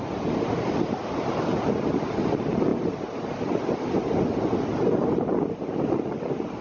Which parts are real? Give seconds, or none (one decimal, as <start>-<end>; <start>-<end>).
0.0-6.6